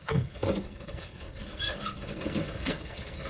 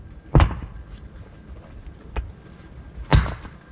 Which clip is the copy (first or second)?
first